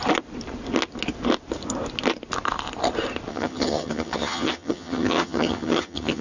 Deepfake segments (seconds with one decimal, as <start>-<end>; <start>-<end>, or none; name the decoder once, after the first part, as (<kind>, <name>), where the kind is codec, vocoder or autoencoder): 3.3-6.2 (vocoder, HiFi-GAN)